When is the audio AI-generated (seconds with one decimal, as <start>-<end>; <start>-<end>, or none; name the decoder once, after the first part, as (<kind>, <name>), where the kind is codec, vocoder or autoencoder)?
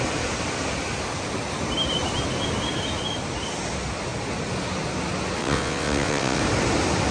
5.4-6.4 (vocoder, WaveNeXt)